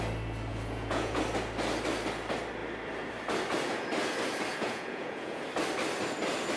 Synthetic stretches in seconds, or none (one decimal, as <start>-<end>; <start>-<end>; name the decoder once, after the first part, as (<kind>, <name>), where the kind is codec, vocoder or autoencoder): 0.5-1.2 (vocoder, Vocos); 4.5-5.4